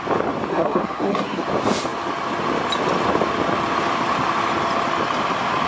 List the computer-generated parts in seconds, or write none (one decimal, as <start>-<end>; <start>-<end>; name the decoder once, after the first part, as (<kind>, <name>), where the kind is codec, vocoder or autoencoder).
0.5-1.4 (codec, SNAC)